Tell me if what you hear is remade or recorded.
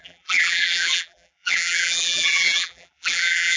remade